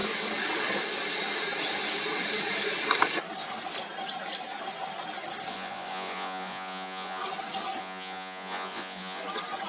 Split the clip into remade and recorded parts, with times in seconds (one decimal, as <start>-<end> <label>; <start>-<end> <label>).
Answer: 0.0-5.5 recorded; 5.5-7.2 remade; 7.2-7.8 recorded; 7.8-9.2 remade; 9.2-9.7 recorded